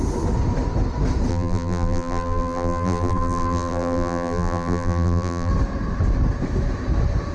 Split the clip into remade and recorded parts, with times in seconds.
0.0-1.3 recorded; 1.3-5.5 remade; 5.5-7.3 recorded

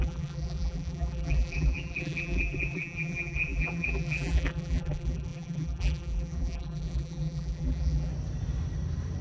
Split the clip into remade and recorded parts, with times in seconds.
0.0-8.1 remade; 8.1-9.2 recorded

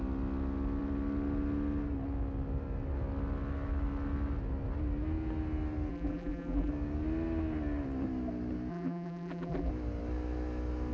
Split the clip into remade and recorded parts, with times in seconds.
0.0-5.9 recorded; 5.9-6.7 remade; 6.7-8.7 recorded; 8.7-9.7 remade; 9.7-10.9 recorded